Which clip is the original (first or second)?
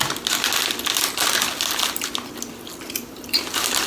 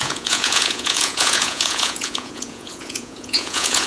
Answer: first